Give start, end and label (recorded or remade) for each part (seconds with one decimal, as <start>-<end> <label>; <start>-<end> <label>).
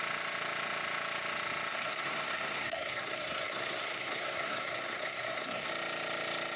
0.0-1.7 recorded; 1.7-5.7 remade; 5.7-6.6 recorded